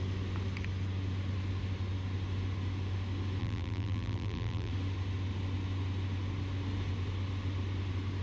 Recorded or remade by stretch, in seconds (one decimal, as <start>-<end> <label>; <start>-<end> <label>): 0.0-3.4 recorded; 3.4-4.7 remade; 4.7-8.2 recorded